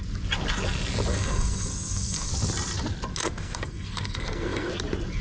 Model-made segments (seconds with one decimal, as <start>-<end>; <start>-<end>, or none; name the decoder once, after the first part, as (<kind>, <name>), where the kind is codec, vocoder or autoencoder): 1.1-2.3 (codec, SNAC); 3.2-4.7